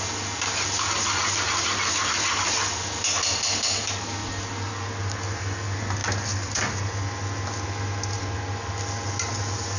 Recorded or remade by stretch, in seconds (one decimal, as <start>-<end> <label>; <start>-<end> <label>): 0.0-9.8 recorded